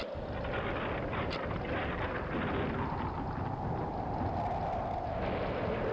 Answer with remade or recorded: recorded